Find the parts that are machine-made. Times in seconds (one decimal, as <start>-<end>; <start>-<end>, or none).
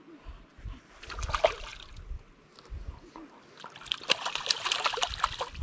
none